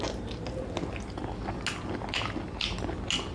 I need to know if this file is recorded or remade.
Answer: recorded